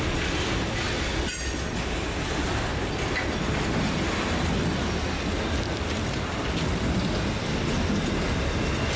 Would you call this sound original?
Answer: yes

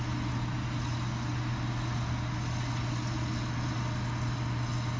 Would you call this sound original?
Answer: yes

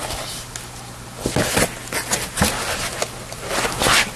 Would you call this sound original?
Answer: yes